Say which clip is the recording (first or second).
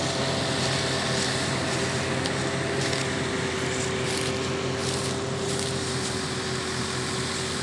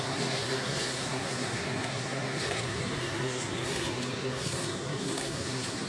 first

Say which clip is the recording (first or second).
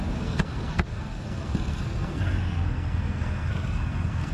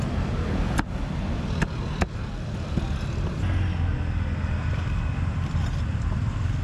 second